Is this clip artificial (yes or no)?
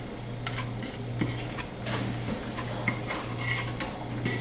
no